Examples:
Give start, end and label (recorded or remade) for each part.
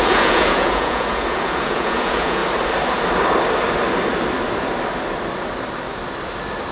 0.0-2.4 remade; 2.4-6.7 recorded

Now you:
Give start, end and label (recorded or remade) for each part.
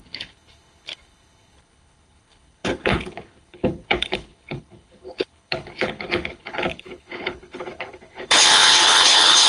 0.0-9.5 remade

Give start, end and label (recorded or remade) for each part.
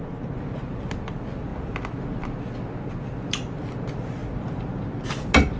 0.0-5.6 recorded